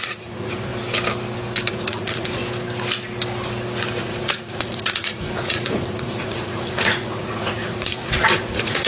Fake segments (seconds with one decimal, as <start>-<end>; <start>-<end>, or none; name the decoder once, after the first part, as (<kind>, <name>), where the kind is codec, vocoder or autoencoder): 0.0-0.7 (vocoder, Vocos); 1.7-2.4; 4.0-8.9